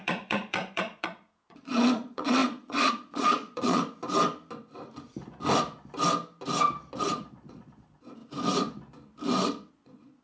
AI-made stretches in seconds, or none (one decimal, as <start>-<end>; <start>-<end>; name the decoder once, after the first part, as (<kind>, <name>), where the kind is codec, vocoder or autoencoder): 0.0-3.8 (vocoder, Vocos); 7.0-8.2; 9.7-10.2